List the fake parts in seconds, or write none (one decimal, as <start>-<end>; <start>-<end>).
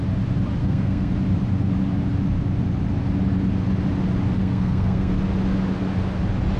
0.6-1.1; 4.4-5.1